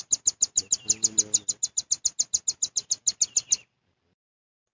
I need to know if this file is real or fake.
real